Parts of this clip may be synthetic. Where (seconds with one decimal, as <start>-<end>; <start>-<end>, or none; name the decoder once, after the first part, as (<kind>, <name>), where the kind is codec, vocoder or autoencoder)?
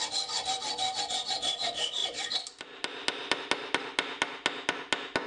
none